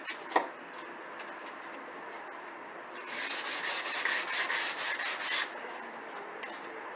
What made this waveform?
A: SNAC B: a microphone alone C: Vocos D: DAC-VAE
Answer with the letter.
B